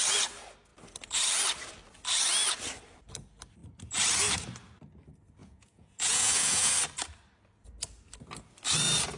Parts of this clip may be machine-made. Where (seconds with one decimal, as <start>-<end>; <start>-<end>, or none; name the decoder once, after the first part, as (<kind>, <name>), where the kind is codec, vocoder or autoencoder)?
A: 5.4-6.7 (vocoder, Vocos)

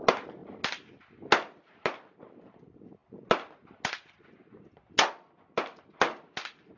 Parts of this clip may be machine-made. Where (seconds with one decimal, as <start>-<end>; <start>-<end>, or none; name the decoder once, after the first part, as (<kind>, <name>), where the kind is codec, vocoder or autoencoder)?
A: none

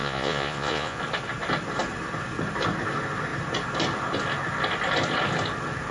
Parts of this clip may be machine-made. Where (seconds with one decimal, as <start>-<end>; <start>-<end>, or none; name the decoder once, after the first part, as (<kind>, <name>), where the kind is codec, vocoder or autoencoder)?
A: 0.0-1.0 (vocoder, Vocos)

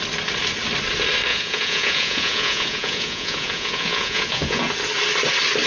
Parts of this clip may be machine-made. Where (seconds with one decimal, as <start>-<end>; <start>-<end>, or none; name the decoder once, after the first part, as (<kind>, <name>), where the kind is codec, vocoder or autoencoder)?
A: 1.3-4.7 (vocoder, Vocos)

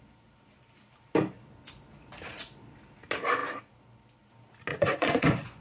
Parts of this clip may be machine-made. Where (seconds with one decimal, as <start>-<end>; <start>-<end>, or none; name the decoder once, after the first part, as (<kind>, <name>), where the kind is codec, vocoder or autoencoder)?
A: 4.7-5.6 (vocoder, Vocos)